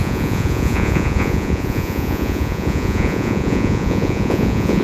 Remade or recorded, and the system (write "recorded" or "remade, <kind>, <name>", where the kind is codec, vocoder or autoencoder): remade, vocoder, Vocos